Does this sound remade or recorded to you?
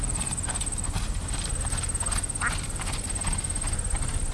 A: recorded